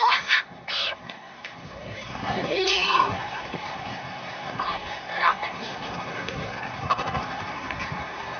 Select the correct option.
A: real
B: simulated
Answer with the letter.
B